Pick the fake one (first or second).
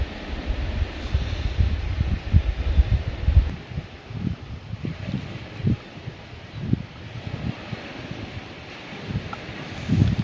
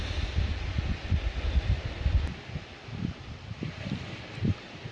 first